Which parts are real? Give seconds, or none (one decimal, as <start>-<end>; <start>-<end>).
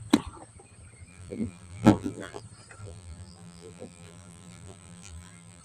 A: 0.0-1.1; 2.4-2.8